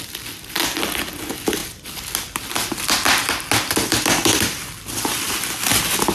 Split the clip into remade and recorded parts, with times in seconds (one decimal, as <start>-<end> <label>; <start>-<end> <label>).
0.0-6.1 recorded